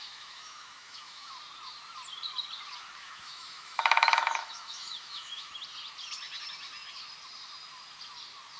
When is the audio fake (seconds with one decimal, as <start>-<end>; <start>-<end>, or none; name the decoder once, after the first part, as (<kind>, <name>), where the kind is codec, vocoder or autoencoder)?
0.0-1.3 (autoencoder, DAC-VAE); 3.0-5.5

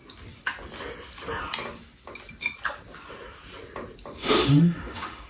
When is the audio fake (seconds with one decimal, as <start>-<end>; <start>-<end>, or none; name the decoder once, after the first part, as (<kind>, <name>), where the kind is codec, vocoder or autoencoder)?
4.2-5.3 (autoencoder, DAC-VAE)

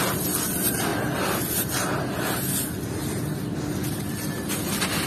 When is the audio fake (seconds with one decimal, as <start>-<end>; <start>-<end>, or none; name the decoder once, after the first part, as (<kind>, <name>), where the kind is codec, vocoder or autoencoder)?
none

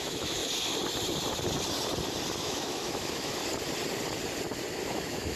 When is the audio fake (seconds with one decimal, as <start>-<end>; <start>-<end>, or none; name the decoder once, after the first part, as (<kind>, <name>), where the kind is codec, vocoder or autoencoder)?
0.0-0.4 (autoencoder, DAC-VAE); 2.4-3.4; 4.8-5.4